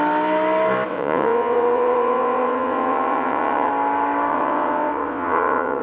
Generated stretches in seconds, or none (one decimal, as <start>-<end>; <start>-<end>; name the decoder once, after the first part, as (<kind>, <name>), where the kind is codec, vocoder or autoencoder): 0.9-3.7 (vocoder, WaveNeXt); 4.3-5.8